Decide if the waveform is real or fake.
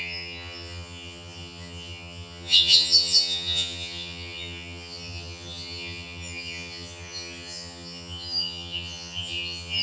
fake